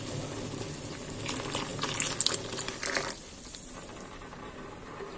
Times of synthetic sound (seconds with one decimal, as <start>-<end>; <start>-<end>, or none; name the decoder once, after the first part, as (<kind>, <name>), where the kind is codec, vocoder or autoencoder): none